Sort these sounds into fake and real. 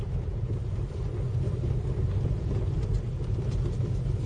real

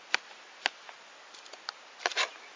real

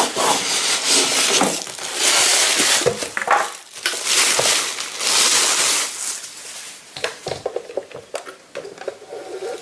real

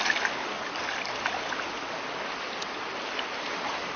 real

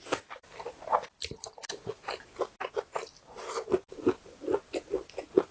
real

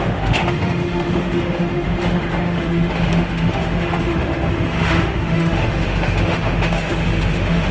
fake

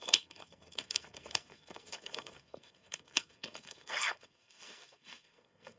fake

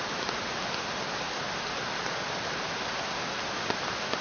real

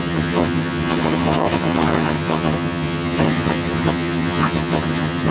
fake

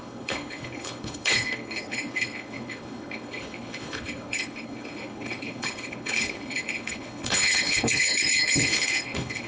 fake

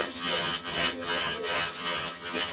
fake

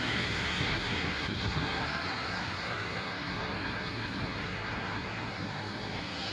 fake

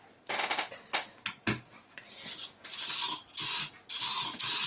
real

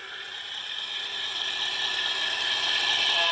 real